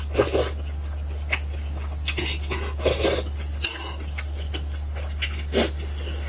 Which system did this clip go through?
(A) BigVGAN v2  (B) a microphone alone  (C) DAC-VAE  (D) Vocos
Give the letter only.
B